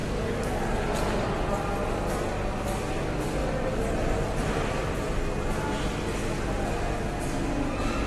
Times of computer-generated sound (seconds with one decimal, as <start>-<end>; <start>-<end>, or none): 0.0-0.7